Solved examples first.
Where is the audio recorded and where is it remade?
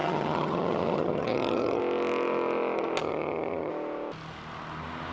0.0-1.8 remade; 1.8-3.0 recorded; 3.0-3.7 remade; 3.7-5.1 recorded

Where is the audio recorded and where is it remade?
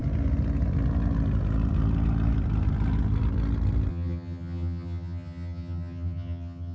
0.0-3.9 recorded; 3.9-6.7 remade